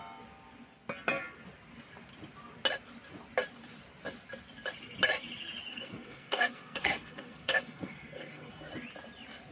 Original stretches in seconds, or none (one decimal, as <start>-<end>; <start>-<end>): 0.0-5.7; 8.7-9.5